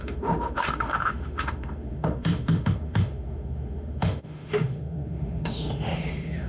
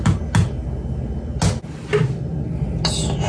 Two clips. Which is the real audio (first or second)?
second